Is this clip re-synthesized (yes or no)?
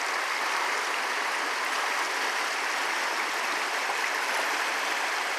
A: no